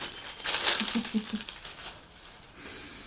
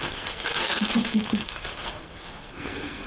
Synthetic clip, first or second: second